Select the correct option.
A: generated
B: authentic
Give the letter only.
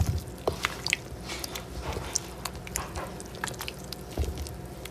B